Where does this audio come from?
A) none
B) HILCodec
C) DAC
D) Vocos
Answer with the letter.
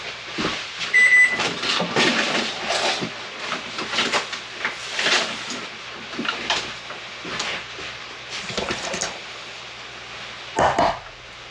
A